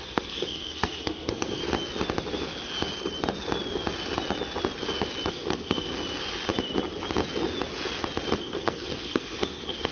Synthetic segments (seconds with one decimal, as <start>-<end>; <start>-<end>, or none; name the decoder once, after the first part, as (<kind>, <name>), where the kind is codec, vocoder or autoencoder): 0.0-1.6 (codec, SNAC); 5.3-5.9; 8.4-9.9